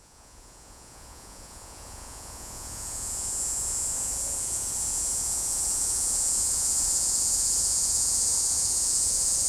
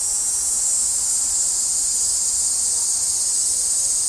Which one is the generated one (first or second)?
first